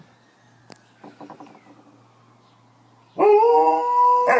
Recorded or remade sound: recorded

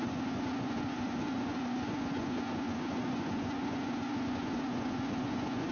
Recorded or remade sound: remade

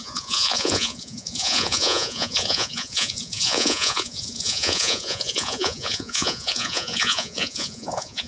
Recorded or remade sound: remade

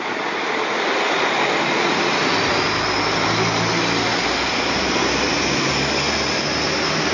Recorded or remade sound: recorded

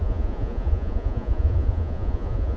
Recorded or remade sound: remade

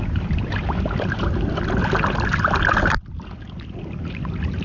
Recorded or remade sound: recorded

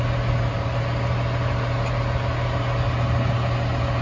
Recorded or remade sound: recorded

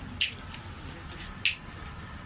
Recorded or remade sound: recorded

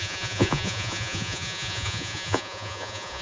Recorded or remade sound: remade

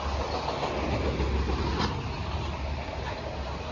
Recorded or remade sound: recorded